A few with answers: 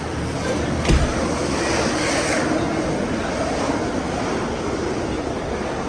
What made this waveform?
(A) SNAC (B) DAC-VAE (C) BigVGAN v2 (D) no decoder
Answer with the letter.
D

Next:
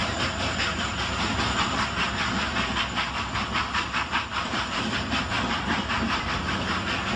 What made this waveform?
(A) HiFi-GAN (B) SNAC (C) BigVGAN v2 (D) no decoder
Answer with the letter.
C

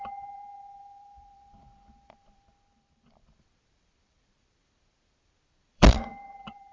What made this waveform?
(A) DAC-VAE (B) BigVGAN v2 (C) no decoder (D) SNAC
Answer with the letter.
B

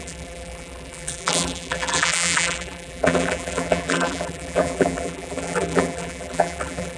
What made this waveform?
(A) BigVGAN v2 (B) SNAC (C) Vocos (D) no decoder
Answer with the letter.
A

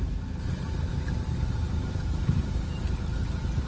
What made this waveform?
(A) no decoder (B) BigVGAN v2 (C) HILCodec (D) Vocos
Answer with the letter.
B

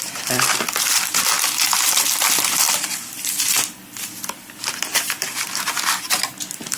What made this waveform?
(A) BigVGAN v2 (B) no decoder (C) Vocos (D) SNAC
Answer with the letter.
A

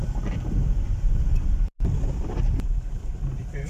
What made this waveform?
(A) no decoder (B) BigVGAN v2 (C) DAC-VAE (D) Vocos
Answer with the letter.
B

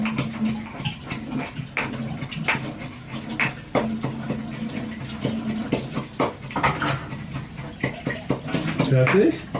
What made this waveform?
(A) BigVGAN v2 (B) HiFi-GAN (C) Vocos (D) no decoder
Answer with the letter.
D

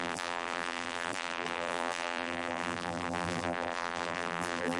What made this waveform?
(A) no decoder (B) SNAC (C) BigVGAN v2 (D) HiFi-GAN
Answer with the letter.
C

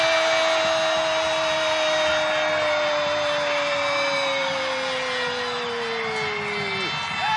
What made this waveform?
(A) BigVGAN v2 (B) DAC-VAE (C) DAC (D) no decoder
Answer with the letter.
D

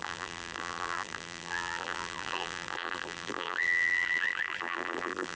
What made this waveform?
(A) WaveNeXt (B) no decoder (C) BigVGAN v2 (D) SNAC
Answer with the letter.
C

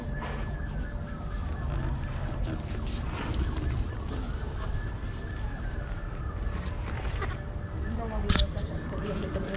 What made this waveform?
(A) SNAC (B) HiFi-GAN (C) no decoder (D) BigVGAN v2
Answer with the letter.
C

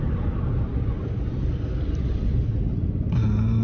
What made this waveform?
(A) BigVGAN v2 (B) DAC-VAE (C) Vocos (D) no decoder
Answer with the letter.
D